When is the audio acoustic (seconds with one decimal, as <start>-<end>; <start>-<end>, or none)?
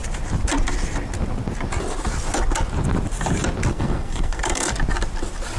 0.0-3.7; 4.7-5.6